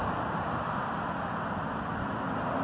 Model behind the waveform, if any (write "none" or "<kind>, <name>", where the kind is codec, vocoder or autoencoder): none